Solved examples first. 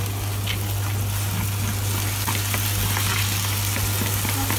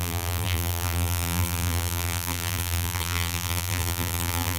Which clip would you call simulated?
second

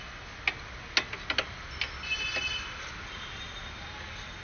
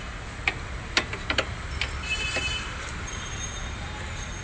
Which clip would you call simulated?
second